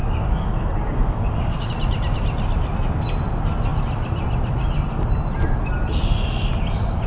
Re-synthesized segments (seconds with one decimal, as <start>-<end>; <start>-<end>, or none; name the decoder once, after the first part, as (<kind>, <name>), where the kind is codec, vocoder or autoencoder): 0.0-1.7 (codec, DAC)